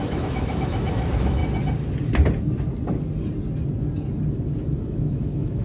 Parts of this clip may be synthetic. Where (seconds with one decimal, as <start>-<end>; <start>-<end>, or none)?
0.0-1.4; 4.8-5.6